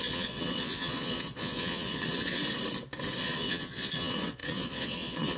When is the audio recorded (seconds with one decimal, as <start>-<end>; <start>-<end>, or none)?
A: 2.4-3.2